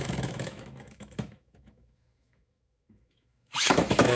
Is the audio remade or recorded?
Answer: remade